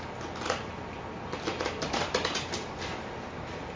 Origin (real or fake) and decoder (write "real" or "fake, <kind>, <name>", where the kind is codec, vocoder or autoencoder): real